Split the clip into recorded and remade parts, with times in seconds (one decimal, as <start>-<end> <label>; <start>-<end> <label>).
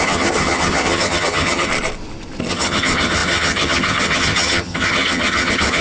0.0-1.7 remade; 1.7-2.5 recorded; 2.5-5.8 remade